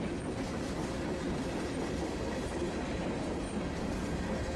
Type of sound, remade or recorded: recorded